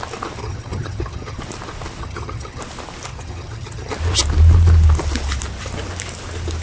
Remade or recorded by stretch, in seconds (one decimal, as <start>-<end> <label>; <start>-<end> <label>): 0.0-0.4 recorded; 0.4-1.4 remade; 1.4-2.0 recorded; 2.0-2.6 remade; 2.6-3.1 recorded; 3.1-3.9 remade; 3.9-6.6 recorded